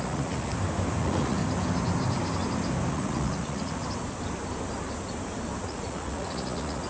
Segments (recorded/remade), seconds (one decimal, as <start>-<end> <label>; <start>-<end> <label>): 0.0-0.5 remade; 0.5-1.0 recorded; 1.0-1.4 remade; 1.4-2.9 recorded; 2.9-3.8 remade; 3.8-5.6 recorded; 5.6-6.9 remade